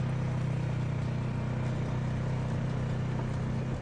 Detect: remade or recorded recorded